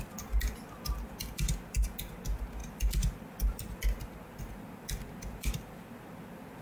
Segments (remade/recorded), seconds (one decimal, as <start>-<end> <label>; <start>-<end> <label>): 0.0-6.6 recorded